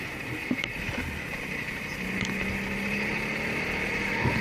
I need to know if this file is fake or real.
real